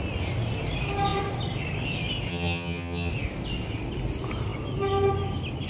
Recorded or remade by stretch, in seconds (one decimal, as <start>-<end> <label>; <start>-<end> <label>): 0.0-2.3 recorded; 2.3-3.1 remade; 3.1-5.7 recorded